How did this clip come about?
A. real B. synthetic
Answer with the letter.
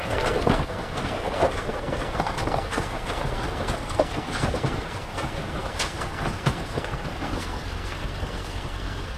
B